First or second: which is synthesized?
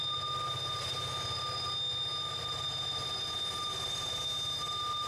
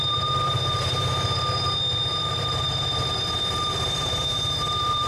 second